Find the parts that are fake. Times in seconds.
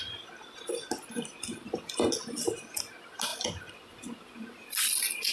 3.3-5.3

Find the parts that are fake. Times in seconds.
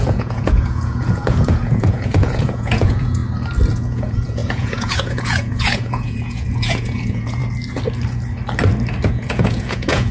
0.0-3.2; 3.7-7.4; 9.1-10.1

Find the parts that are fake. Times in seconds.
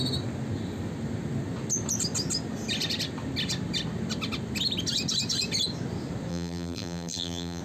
6.3-7.6